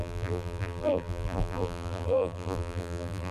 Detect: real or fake fake